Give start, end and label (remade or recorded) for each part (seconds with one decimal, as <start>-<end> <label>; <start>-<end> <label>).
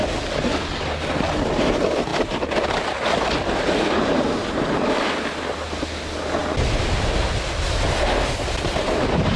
0.0-9.4 recorded